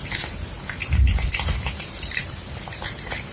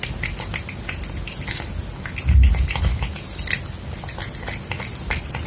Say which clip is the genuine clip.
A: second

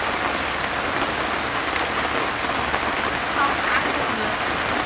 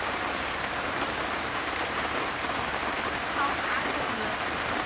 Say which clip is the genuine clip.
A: first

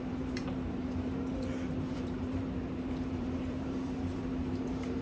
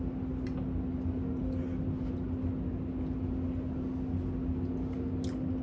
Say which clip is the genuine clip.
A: second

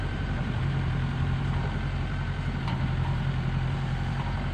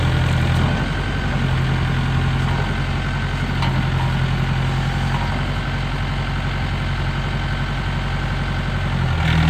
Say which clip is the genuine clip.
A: second